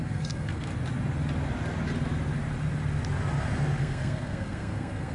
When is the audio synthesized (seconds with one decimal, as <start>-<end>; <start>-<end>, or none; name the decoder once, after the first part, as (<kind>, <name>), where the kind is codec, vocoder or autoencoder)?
0.0-0.7 (codec, SNAC); 3.8-5.1